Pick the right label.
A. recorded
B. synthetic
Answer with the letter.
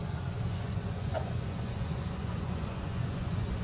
B